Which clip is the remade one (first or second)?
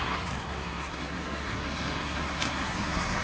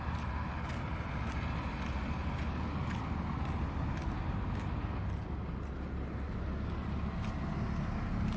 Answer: first